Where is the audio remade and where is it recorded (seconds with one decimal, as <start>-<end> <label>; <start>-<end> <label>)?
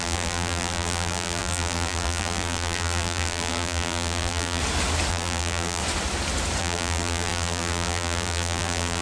0.0-4.6 remade; 4.6-5.1 recorded; 5.1-5.8 remade; 5.8-6.6 recorded; 6.6-9.0 remade